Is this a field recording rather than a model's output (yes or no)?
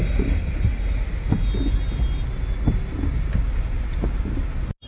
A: yes